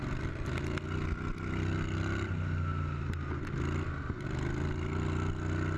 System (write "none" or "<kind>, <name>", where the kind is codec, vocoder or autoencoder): none